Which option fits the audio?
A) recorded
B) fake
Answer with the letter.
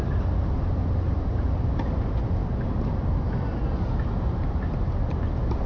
A